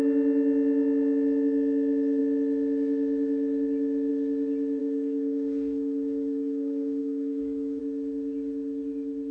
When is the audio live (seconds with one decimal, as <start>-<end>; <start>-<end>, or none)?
0.0-4.8; 7.8-9.3